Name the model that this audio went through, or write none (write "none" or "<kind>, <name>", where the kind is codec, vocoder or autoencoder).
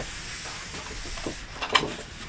none